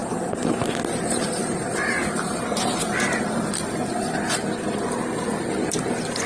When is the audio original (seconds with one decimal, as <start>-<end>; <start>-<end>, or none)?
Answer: 3.4-6.3